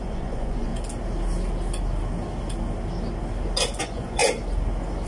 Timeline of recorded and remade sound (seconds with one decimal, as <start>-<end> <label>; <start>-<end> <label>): 0.0-0.7 remade; 0.7-3.8 recorded; 3.8-4.2 remade; 4.2-5.1 recorded